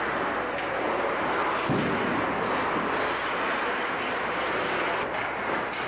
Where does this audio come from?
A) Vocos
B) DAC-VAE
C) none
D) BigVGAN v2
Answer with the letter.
C